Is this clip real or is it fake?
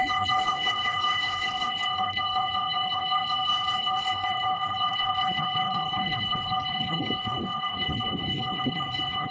fake